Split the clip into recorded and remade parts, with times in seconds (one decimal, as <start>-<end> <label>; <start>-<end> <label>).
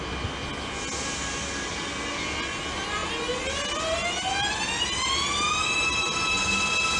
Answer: 0.0-7.0 recorded